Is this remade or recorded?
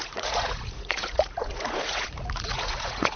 remade